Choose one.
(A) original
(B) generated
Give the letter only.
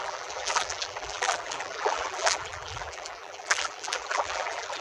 B